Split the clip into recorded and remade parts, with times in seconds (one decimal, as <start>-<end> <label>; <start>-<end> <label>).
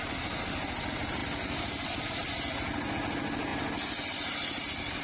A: 0.0-5.0 recorded